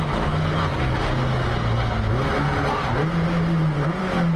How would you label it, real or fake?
real